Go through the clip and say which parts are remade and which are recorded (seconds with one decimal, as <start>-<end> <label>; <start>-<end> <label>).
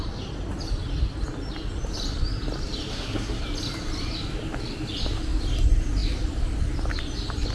0.0-2.9 recorded; 2.9-3.4 remade; 3.4-7.5 recorded